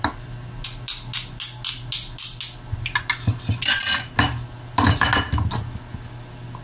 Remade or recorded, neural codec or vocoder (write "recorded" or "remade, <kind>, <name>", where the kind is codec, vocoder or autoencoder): recorded